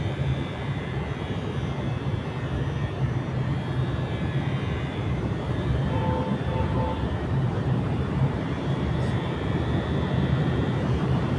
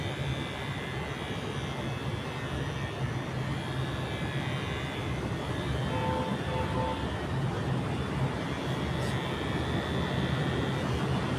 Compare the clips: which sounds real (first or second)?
second